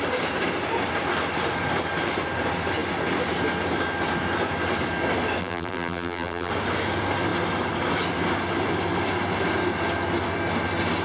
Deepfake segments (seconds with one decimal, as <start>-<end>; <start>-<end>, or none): 5.4-6.5

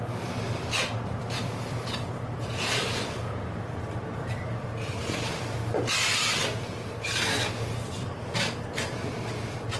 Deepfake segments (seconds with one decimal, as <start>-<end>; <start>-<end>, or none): 0.0-9.8

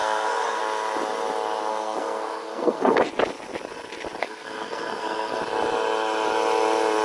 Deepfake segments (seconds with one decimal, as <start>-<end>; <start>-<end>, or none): 0.0-0.6; 1.7-3.1; 4.2-5.4

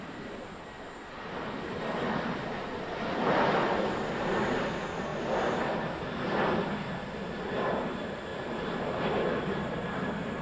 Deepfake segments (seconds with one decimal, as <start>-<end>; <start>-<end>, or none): none

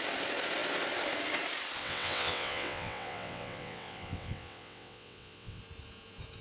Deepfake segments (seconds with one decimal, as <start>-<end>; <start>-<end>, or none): 1.8-5.6

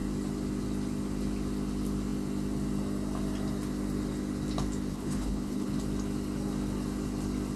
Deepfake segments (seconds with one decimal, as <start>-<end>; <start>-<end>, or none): 4.9-5.8